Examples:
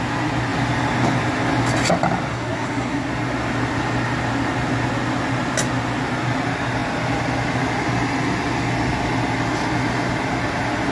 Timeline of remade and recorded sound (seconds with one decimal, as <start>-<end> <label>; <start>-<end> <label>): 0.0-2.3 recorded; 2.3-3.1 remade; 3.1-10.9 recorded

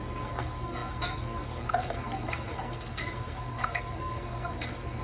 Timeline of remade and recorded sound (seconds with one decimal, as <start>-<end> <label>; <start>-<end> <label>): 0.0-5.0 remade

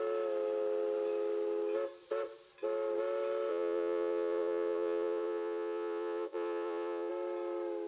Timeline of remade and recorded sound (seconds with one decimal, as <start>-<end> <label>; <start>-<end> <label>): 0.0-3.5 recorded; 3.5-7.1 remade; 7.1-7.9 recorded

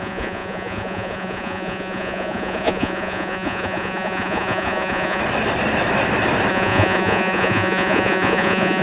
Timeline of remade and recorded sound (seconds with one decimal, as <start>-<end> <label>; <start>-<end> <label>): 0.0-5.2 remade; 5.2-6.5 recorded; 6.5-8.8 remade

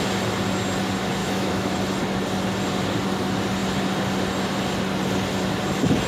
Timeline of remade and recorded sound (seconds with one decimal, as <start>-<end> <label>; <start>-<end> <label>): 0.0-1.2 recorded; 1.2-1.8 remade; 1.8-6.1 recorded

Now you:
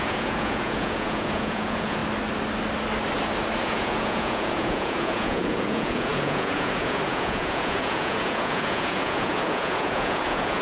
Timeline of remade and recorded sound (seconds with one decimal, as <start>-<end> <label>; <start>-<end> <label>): 0.0-2.0 remade; 2.0-3.6 recorded; 3.6-10.6 remade

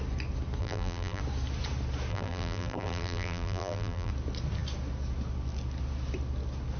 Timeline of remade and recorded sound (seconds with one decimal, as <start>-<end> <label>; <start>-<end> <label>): 0.0-0.6 recorded; 0.6-1.2 remade; 1.2-2.1 recorded; 2.1-4.1 remade; 4.1-6.8 recorded